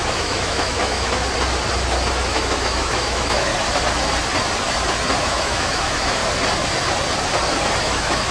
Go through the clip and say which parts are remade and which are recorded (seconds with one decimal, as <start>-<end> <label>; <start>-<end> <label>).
0.0-1.2 remade; 1.2-2.2 recorded; 2.2-3.5 remade; 3.5-5.2 recorded; 5.2-6.2 remade; 6.2-7.8 recorded; 7.8-8.3 remade